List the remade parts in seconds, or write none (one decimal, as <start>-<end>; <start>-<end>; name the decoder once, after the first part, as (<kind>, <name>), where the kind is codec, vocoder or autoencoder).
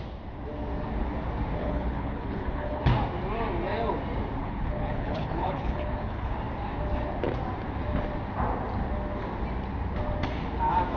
1.6-2.8 (codec, HILCodec); 4.4-6.3